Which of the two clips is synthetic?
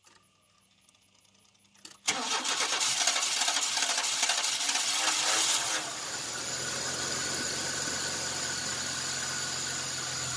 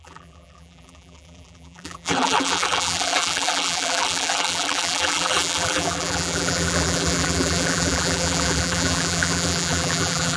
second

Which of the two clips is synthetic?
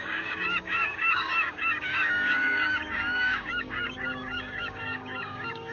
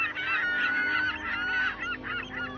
first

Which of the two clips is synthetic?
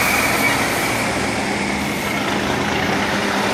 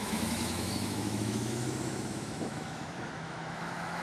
second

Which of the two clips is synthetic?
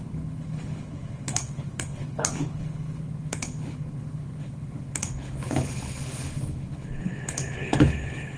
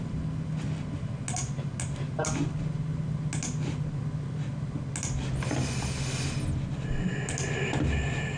first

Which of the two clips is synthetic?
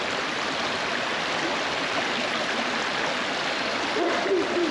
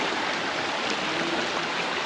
second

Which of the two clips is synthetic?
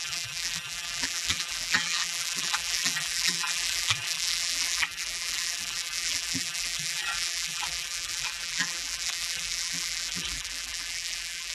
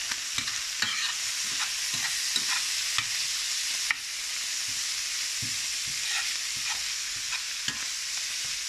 first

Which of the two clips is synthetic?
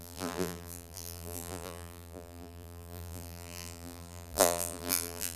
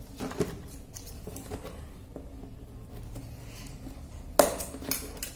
first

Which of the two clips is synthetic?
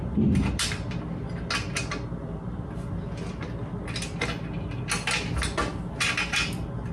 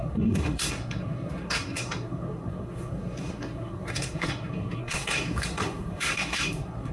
second